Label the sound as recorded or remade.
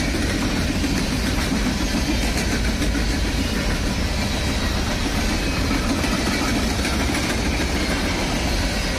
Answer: recorded